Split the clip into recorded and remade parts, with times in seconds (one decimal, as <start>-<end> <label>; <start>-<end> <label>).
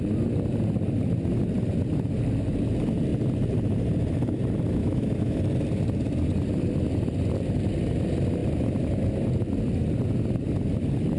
0.0-4.8 recorded; 4.8-5.4 remade; 5.4-11.2 recorded